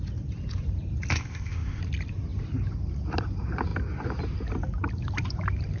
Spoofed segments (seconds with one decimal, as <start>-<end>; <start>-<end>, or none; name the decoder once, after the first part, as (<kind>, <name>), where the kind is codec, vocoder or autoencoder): 1.1-1.8 (codec, ZipCodec)